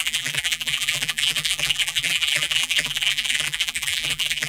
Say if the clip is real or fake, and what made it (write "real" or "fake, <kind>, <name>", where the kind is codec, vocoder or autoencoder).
fake, vocoder, BigVGAN v2